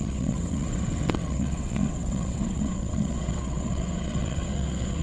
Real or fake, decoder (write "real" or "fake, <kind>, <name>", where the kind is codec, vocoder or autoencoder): fake, vocoder, WaveNeXt